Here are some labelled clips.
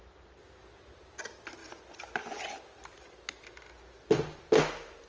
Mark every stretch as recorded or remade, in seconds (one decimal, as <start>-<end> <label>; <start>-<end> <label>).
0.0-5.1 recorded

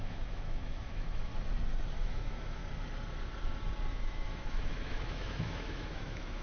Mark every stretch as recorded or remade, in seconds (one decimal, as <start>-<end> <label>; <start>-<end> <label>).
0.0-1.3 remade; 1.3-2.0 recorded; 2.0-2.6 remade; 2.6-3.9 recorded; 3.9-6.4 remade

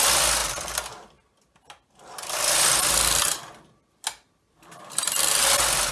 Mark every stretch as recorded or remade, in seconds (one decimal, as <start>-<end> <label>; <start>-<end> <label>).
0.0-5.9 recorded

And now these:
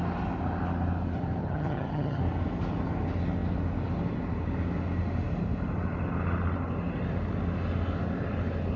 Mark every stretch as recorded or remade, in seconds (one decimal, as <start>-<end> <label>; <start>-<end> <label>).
0.0-1.4 recorded; 1.4-2.2 remade; 2.2-8.8 recorded

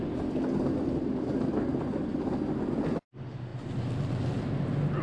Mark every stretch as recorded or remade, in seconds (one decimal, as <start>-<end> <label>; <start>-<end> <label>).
0.0-5.0 recorded

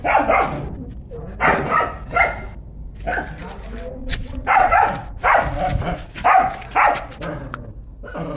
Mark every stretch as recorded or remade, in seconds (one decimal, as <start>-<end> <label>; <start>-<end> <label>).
0.0-4.0 recorded; 4.0-4.7 remade; 4.7-8.4 recorded